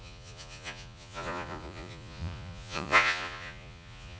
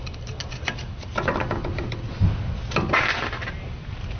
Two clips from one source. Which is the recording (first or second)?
second